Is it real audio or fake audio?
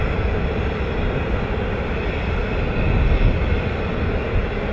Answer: real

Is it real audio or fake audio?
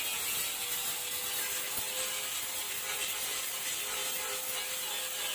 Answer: real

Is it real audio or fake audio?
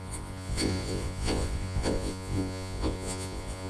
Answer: fake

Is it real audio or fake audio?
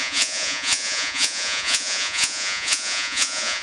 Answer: fake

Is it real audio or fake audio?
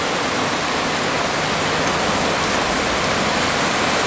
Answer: real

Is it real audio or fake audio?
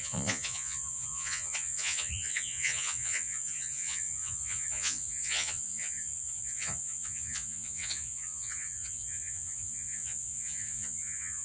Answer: fake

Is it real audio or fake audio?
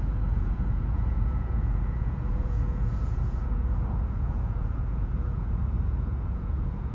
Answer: fake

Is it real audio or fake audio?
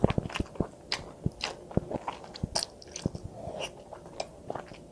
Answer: real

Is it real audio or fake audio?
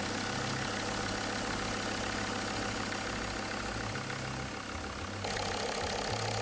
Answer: real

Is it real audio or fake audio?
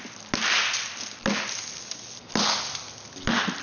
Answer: real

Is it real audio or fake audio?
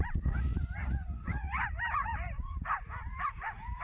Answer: fake